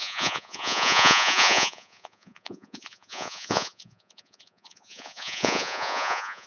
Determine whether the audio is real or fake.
fake